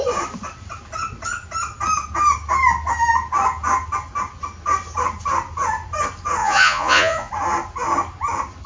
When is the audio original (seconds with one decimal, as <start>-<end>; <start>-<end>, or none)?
0.0-6.4; 7.3-8.7